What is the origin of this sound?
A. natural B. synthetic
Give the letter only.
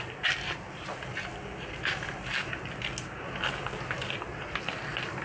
A